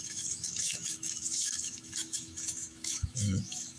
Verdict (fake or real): fake